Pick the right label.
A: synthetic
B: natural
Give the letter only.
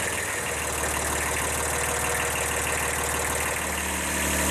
B